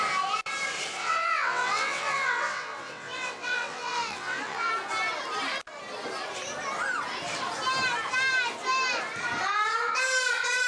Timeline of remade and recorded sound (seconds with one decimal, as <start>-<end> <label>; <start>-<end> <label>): 0.0-1.0 recorded; 1.0-4.7 remade; 4.7-10.7 recorded